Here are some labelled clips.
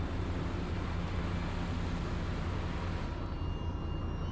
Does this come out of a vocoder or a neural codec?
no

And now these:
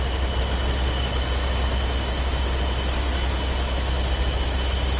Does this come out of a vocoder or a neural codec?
no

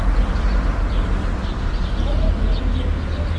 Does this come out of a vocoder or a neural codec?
no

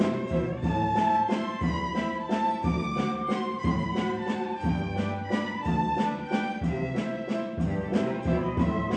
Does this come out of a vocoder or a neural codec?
no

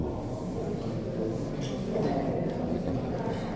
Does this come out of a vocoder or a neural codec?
no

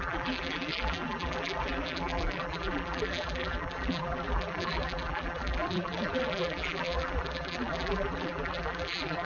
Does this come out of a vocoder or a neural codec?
yes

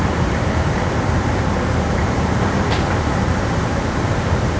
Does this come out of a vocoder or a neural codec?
yes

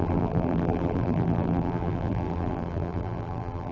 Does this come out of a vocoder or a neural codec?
yes